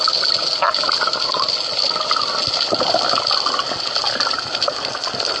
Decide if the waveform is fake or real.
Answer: real